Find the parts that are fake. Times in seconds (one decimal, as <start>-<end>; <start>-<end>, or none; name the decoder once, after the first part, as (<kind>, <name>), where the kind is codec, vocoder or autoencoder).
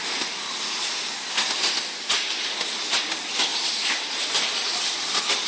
none